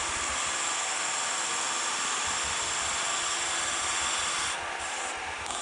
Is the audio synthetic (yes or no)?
no